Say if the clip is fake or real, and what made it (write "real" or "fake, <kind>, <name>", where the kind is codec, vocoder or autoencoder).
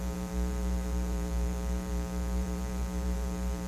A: fake, vocoder, BigVGAN v2